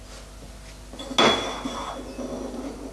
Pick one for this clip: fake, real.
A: real